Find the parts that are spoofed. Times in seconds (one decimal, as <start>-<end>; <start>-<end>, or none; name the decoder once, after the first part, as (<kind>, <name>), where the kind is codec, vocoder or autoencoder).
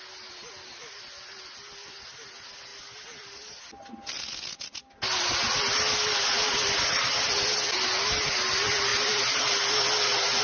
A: 0.8-1.9 (vocoder, BigVGAN v2); 8.9-9.4